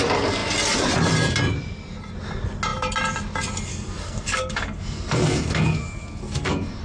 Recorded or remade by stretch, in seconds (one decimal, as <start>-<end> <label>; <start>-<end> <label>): 0.0-3.7 recorded; 3.7-6.8 remade

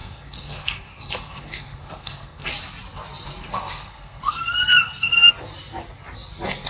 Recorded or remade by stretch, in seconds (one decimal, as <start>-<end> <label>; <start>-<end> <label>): 0.0-2.5 remade; 2.5-3.4 recorded; 3.4-5.3 remade; 5.3-6.7 recorded

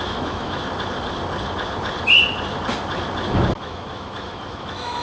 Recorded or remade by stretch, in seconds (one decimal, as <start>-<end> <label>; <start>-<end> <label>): 0.0-0.6 remade; 0.6-3.6 recorded; 3.6-5.0 remade